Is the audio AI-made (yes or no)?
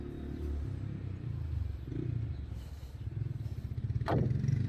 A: no